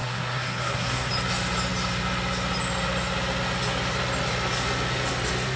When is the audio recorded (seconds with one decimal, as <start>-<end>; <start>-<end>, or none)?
1.1-5.6